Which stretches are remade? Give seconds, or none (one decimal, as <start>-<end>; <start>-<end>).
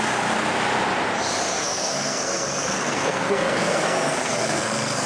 1.6-5.1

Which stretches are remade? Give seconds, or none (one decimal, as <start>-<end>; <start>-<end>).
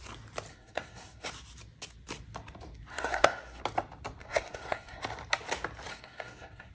0.5-1.3; 2.9-3.6; 4.2-5.0; 5.9-6.7